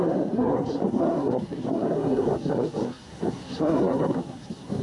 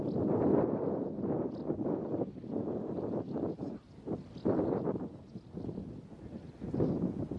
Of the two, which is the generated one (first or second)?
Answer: first